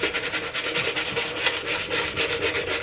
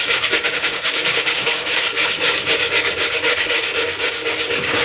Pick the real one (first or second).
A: first